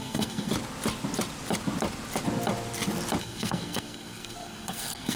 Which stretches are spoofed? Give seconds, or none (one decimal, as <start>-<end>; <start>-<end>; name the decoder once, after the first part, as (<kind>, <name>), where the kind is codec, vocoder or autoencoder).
0.0-0.5 (codec, SNAC); 3.2-5.2